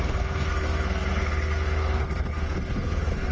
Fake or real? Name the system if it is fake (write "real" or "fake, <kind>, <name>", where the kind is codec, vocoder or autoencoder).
fake, codec, SNAC